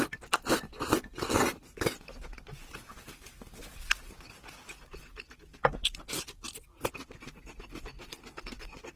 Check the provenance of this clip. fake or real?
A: real